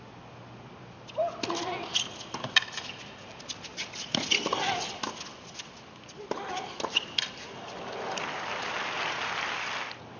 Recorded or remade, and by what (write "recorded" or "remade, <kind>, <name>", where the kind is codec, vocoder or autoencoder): recorded